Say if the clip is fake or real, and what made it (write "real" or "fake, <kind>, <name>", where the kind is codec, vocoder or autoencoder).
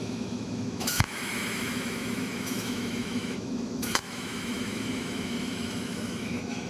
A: fake, autoencoder, DAC-VAE